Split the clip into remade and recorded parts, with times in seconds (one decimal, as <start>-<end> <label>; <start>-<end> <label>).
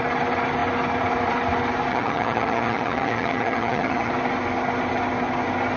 0.0-1.9 recorded; 1.9-4.1 remade; 4.1-5.8 recorded